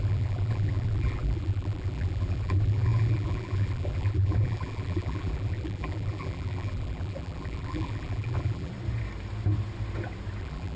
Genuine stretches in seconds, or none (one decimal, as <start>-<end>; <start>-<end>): 8.7-10.4